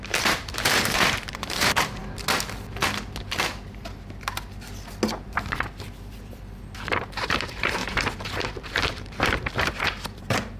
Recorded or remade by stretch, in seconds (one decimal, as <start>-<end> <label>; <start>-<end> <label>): 0.0-2.0 remade; 2.0-6.9 recorded; 6.9-10.6 remade